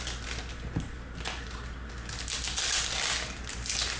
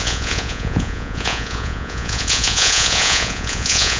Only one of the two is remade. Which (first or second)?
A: second